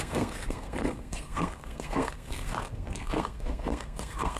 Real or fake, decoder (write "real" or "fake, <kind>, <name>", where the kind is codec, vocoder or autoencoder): fake, codec, SNAC